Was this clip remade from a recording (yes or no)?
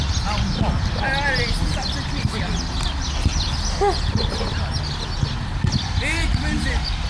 no